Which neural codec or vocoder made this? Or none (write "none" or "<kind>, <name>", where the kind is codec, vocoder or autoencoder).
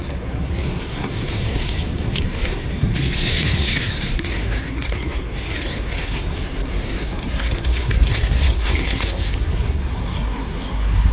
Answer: codec, SNAC